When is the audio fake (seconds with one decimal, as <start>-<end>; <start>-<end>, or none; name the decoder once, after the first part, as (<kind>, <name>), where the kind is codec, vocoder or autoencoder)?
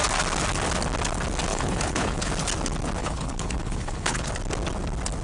1.5-2.3 (codec, HILCodec); 3.0-4.3